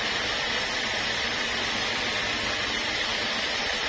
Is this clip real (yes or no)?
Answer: yes